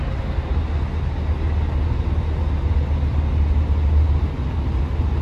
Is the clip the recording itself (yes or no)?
yes